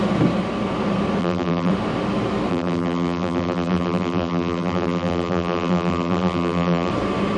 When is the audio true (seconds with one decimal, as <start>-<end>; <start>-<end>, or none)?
0.0-1.2; 1.7-2.5; 6.9-7.4